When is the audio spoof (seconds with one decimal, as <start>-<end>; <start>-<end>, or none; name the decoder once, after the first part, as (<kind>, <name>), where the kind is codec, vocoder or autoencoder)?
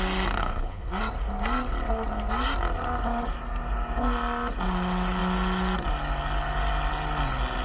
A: 0.4-0.9 (codec, HILCodec)